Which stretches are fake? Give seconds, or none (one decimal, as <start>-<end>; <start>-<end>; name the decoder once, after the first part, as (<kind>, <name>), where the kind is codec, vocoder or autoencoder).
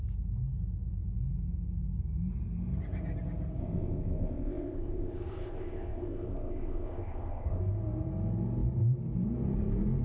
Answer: 3.6-7.6 (codec, ZipCodec)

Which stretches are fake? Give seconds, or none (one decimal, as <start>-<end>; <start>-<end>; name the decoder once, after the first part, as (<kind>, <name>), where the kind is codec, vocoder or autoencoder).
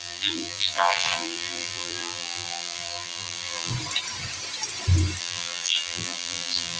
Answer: 0.0-3.7 (vocoder, BigVGAN v2); 5.2-6.8